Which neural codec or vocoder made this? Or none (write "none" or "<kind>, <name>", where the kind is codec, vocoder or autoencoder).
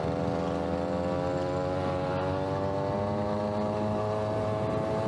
none